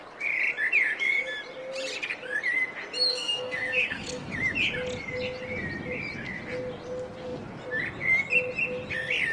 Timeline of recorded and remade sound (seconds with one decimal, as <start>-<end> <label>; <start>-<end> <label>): 0.0-3.1 recorded; 3.1-4.3 remade; 4.3-9.3 recorded